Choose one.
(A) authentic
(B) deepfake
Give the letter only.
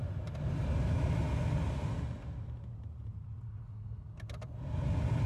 A